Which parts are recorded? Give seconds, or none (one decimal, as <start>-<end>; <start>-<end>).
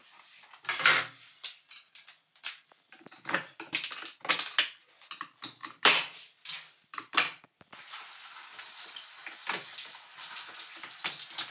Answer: 2.1-11.5